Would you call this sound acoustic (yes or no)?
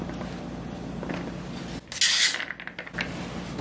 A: yes